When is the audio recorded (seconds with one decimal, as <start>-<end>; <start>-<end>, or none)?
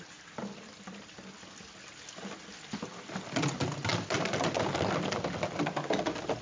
0.0-6.4